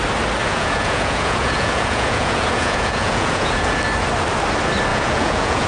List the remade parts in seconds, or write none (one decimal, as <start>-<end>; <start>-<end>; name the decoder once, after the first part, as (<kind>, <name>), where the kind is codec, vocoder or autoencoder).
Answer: 0.4-3.8 (vocoder, Vocos); 4.9-5.7